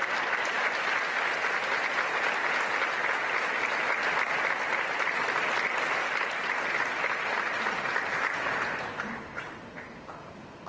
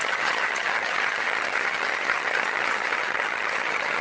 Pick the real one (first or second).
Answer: first